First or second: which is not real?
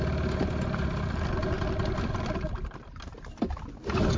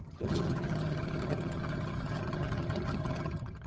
second